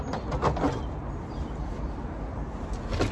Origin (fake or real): real